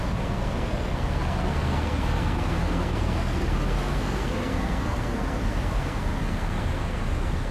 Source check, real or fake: fake